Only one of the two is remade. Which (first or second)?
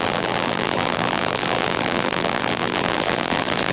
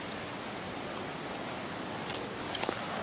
first